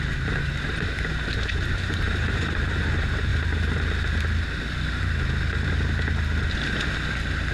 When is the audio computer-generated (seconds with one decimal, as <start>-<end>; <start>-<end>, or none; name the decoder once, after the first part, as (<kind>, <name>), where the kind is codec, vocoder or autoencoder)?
0.0-3.3 (vocoder, BigVGAN v2)